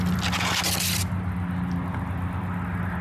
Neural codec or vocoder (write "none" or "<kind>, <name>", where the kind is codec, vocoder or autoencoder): none